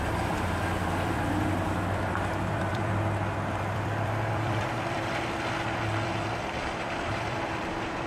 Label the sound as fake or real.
fake